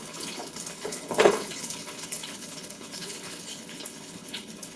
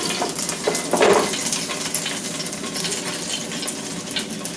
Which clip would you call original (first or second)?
second